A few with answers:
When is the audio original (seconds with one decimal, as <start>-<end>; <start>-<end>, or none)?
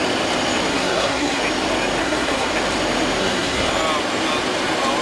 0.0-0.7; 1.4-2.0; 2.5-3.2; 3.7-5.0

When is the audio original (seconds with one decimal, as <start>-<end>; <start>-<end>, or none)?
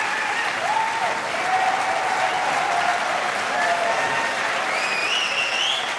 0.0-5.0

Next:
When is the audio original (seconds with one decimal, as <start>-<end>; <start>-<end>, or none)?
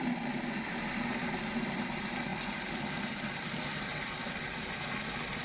0.0-5.4